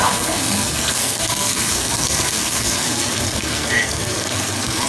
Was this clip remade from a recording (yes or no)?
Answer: yes